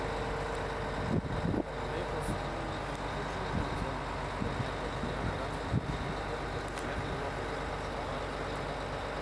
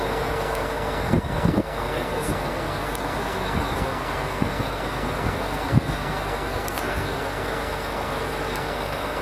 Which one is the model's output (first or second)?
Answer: second